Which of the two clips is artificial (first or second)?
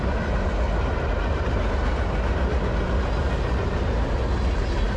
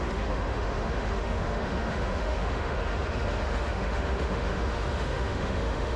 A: second